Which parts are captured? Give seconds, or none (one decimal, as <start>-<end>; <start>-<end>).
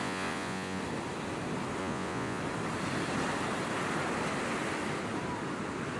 0.8-1.8; 2.4-6.0